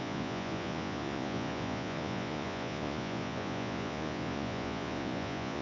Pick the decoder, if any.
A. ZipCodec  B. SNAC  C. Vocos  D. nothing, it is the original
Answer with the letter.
C